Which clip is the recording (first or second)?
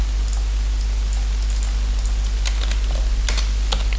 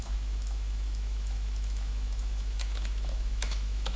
first